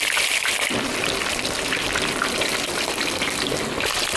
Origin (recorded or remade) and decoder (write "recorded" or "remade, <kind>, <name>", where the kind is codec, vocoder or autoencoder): recorded